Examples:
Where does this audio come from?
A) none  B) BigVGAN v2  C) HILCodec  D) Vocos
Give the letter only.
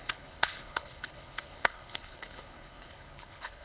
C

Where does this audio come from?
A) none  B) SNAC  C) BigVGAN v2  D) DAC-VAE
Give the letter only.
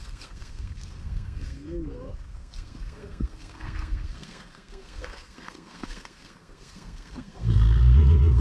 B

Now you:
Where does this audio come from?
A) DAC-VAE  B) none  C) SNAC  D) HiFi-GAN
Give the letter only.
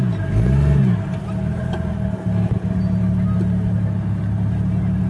B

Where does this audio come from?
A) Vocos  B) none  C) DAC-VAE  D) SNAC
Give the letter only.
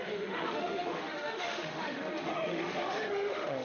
C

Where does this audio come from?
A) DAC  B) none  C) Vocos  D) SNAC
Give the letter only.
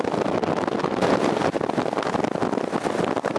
B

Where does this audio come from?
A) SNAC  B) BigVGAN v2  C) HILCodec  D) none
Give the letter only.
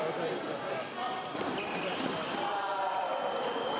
D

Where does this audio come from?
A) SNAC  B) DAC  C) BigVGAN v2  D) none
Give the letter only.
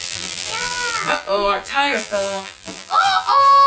C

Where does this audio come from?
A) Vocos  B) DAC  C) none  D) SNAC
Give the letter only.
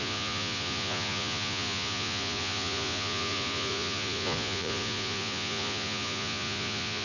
A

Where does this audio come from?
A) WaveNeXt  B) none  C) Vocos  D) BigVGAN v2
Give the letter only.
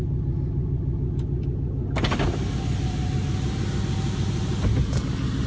B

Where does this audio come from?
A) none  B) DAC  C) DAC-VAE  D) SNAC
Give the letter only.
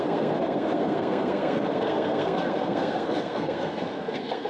D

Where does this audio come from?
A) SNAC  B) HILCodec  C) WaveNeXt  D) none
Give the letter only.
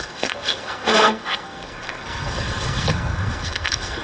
A